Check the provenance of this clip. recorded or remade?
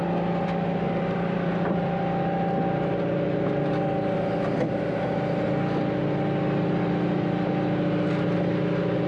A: recorded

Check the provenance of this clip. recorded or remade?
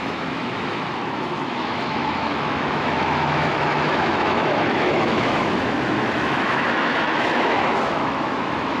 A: remade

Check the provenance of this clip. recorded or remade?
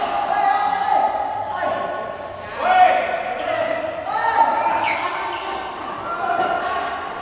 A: recorded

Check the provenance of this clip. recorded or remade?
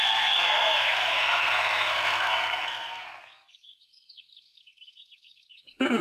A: remade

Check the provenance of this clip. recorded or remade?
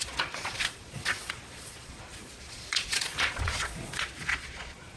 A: remade